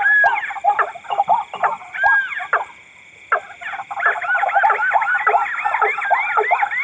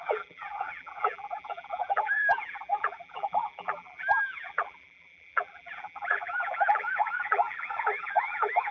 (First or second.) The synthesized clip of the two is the second